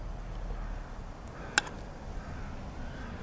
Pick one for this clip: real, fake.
real